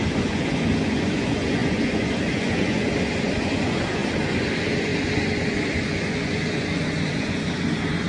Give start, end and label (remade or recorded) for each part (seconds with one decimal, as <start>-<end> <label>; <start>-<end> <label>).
0.0-8.1 remade